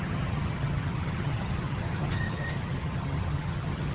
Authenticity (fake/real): fake